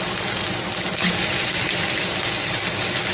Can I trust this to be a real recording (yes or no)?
yes